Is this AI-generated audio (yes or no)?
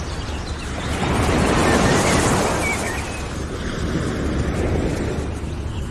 no